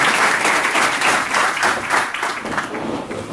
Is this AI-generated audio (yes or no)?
yes